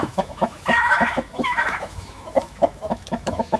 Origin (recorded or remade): remade